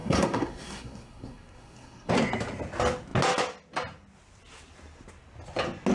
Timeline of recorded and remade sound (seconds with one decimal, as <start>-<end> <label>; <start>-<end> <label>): 0.0-2.1 remade; 2.1-5.9 recorded